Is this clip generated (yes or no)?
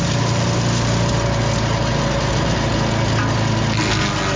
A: no